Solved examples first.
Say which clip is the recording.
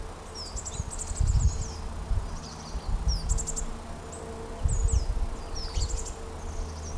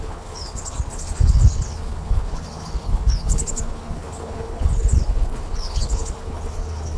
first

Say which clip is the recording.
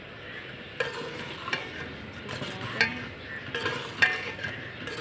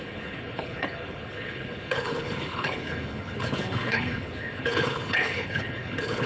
first